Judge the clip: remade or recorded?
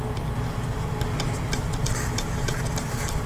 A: recorded